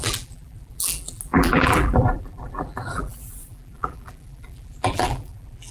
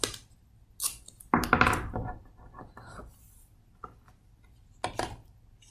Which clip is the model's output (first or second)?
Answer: first